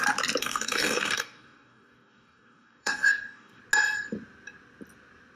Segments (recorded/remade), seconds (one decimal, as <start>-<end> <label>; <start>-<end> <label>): 0.0-0.4 recorded; 0.4-3.6 remade; 3.6-5.4 recorded